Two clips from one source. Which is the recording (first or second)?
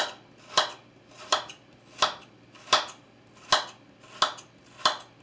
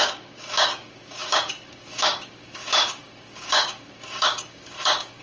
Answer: first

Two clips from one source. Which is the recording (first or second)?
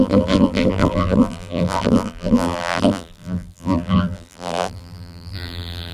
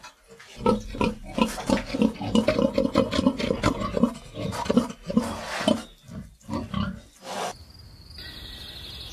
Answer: second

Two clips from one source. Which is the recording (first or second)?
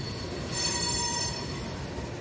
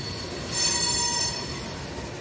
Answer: second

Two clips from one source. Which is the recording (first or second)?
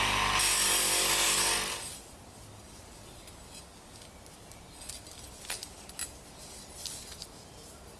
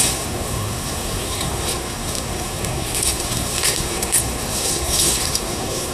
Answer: first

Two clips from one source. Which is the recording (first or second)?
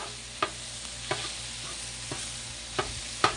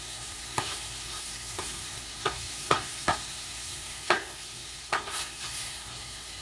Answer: first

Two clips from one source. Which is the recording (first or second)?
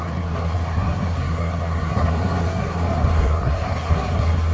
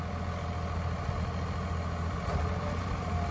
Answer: second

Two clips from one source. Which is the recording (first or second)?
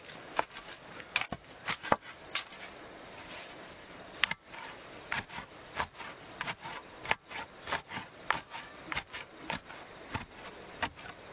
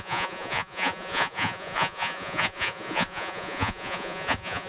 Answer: first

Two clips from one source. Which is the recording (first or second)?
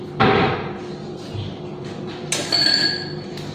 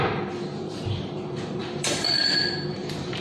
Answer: first